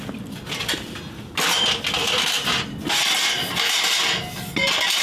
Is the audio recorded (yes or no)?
yes